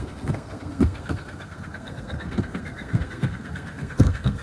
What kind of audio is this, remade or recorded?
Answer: remade